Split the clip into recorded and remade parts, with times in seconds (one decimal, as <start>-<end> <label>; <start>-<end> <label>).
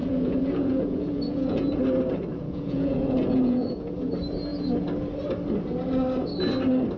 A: 0.0-1.7 remade; 1.7-2.3 recorded; 2.3-3.9 remade; 3.9-7.0 recorded